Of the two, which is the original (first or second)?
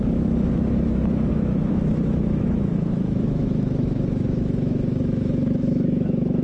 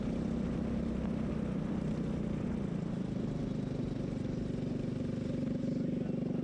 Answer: second